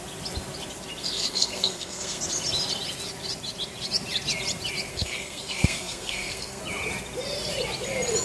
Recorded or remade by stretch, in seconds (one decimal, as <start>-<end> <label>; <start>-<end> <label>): 0.0-1.0 recorded; 1.0-2.2 remade; 2.2-4.9 recorded; 4.9-6.6 remade; 6.6-8.2 recorded

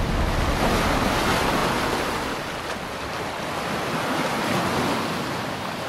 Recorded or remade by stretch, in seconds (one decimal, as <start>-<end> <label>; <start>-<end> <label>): 0.0-5.9 recorded

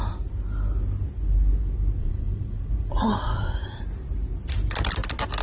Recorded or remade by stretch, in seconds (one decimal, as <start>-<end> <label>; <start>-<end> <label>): 0.0-2.0 recorded; 2.0-3.8 remade; 3.8-5.4 recorded

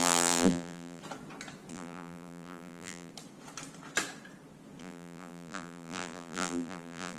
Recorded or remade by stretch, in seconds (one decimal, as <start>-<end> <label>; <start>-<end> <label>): 0.0-1.0 remade; 1.0-1.7 recorded; 1.7-3.1 remade; 3.1-4.8 recorded; 4.8-7.2 remade

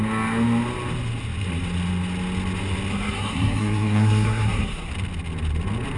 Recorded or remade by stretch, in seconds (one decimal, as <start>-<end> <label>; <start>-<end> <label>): 0.0-2.9 recorded; 2.9-4.9 remade; 4.9-6.0 recorded

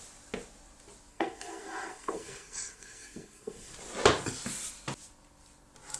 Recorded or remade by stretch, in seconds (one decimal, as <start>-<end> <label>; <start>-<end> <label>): 0.0-1.1 recorded; 1.1-3.7 remade; 3.7-6.0 recorded

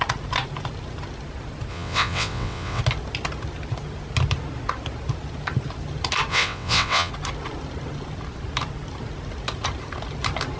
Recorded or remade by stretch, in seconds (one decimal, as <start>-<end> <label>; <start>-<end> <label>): 0.0-1.7 recorded; 1.7-2.8 remade; 2.8-6.3 recorded; 6.3-7.1 remade; 7.1-10.6 recorded

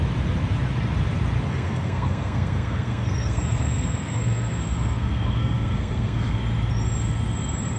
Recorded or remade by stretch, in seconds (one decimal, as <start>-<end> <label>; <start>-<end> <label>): 0.0-1.5 recorded; 1.5-6.4 remade; 6.4-7.8 recorded